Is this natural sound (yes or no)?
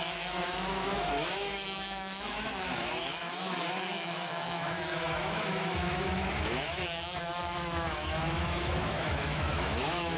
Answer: no